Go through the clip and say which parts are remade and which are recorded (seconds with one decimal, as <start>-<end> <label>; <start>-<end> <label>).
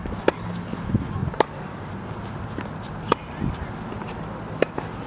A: 0.0-5.1 recorded